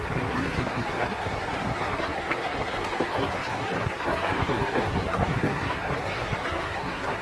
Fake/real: fake